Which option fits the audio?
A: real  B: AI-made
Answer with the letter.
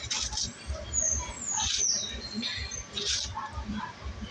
A